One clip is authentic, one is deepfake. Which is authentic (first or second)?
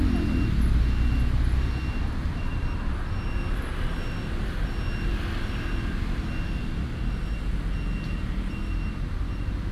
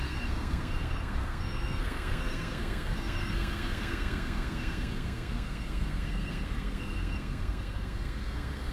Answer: first